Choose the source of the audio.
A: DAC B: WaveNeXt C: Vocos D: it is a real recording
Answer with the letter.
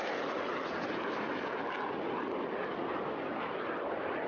D